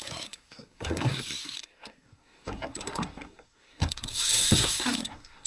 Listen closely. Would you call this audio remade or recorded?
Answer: remade